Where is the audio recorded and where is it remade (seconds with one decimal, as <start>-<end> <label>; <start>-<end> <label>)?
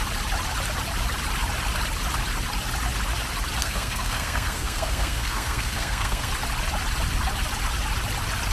0.0-3.6 recorded; 3.6-6.3 remade; 6.3-8.5 recorded